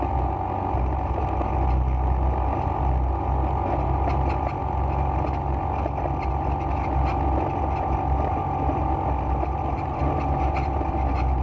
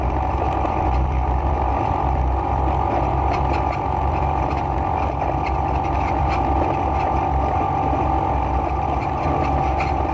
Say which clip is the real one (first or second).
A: first